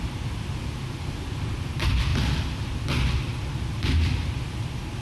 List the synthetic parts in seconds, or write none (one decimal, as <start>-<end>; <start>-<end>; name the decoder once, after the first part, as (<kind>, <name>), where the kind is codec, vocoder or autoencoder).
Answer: none